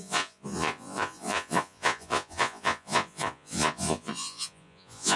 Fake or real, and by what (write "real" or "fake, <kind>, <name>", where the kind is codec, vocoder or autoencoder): fake, vocoder, Vocos